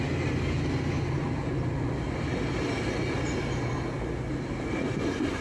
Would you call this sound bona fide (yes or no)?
yes